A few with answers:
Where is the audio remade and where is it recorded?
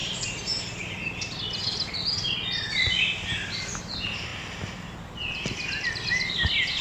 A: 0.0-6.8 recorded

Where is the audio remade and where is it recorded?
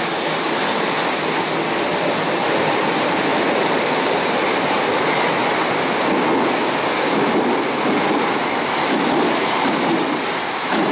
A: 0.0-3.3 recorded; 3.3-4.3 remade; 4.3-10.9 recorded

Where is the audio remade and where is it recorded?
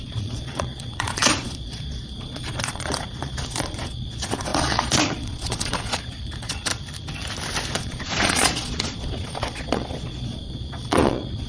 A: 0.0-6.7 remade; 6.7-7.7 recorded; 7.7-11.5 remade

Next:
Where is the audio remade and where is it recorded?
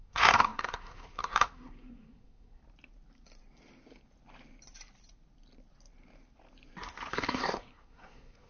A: 0.0-2.6 remade; 2.6-7.1 recorded; 7.1-8.5 remade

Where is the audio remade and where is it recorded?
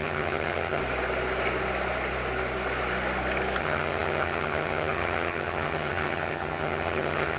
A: 0.0-0.8 remade; 0.8-3.6 recorded; 3.6-7.4 remade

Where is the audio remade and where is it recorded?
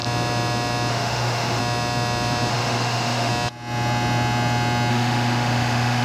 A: 0.0-0.9 recorded; 0.9-1.6 remade; 1.6-2.5 recorded; 2.5-3.3 remade; 3.3-4.9 recorded; 4.9-6.0 remade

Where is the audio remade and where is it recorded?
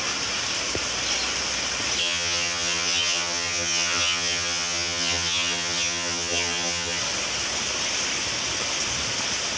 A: 0.0-2.0 recorded; 2.0-7.0 remade; 7.0-9.6 recorded